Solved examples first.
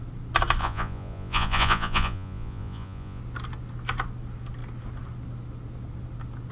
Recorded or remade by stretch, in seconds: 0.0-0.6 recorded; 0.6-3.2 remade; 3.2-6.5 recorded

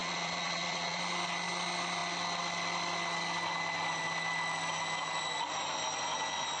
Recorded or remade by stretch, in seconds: 0.0-1.0 remade; 1.0-6.6 recorded

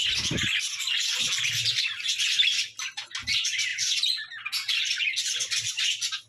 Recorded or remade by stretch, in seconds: 0.0-6.3 recorded